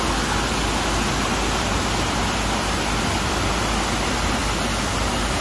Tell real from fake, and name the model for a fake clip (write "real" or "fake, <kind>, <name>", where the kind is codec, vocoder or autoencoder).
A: real